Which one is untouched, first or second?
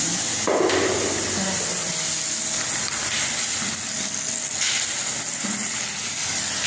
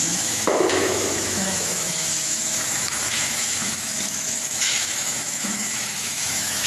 first